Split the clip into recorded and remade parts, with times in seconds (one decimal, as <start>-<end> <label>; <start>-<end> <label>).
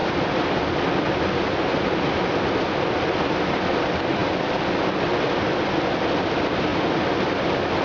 0.0-7.8 recorded